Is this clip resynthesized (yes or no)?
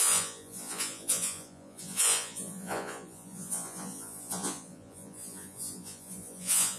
yes